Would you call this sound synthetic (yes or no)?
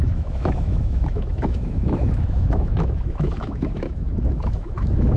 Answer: yes